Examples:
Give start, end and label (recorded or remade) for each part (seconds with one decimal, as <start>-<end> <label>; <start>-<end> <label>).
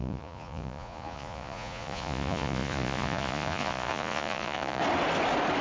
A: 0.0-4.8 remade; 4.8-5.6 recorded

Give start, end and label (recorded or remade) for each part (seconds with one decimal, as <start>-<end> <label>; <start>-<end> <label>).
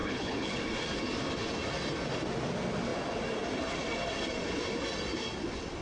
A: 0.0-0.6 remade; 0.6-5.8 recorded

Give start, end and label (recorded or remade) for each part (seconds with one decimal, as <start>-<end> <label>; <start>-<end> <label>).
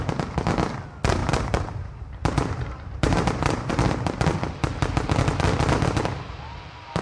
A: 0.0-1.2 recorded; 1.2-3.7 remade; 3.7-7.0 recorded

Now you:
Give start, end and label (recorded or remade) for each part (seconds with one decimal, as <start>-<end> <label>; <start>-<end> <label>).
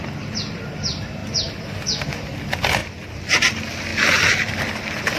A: 0.0-5.2 recorded